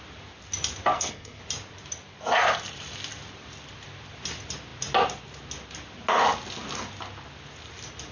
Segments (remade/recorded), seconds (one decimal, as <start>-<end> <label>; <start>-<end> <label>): 0.0-0.9 recorded; 0.9-1.4 remade; 1.4-8.1 recorded